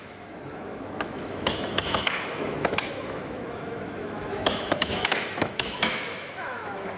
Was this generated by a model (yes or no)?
yes